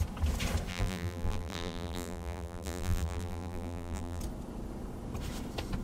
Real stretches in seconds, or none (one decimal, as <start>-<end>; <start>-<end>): 0.0-0.7; 4.2-5.8